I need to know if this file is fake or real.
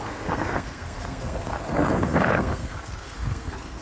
fake